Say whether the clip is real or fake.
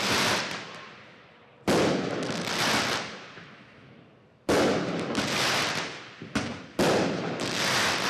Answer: fake